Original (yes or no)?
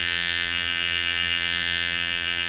no